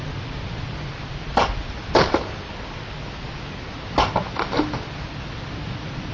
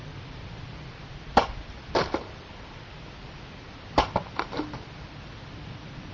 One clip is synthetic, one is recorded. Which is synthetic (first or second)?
second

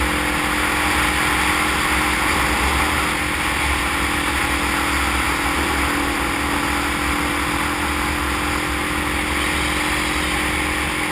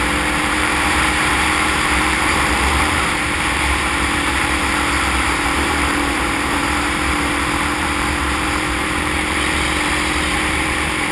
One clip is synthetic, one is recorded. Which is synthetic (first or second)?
second